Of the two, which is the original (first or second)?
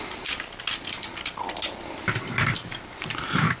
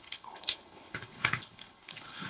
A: first